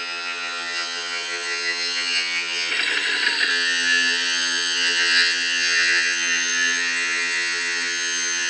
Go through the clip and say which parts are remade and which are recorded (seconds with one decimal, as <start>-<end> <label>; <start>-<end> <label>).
0.0-2.7 remade; 2.7-3.5 recorded; 3.5-8.5 remade